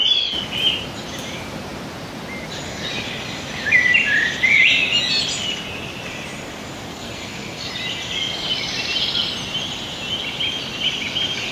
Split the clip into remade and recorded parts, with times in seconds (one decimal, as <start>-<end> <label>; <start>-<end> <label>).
0.0-6.9 recorded; 6.9-7.7 remade; 7.7-11.5 recorded